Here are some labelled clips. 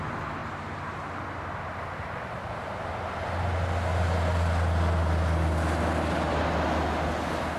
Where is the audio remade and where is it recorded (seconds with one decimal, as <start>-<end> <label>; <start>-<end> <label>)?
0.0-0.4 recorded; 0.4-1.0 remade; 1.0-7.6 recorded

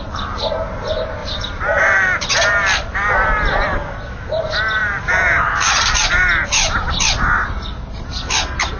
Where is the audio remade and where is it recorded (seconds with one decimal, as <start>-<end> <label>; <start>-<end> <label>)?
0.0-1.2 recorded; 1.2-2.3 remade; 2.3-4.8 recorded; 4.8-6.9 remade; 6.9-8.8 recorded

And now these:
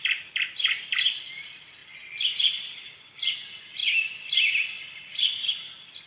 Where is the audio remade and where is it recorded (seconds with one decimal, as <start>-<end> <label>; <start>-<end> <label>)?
0.0-6.1 recorded